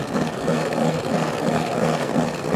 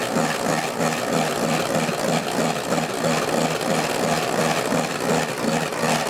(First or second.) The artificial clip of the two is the first